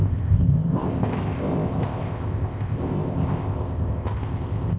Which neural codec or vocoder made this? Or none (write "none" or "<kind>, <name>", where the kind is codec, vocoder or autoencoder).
codec, ZipCodec